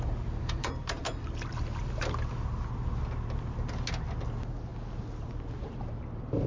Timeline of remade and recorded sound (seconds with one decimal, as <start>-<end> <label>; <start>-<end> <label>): 0.0-6.5 recorded